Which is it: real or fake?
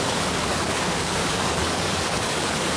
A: fake